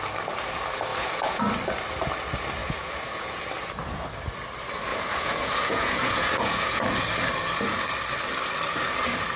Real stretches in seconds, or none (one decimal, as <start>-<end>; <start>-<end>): 0.0-0.9; 1.4-2.6; 3.4-4.9; 6.8-9.4